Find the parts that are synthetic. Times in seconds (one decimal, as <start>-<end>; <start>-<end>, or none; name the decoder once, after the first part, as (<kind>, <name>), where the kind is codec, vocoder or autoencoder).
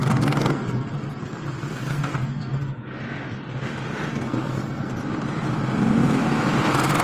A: 0.0-3.0 (codec, SNAC); 4.1-4.9